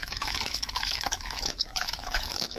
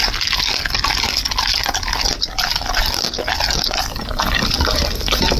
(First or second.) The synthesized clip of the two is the first